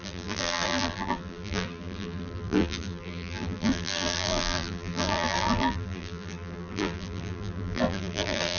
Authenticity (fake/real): fake